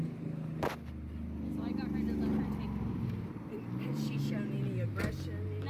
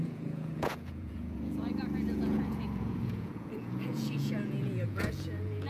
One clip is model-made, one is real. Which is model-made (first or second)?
second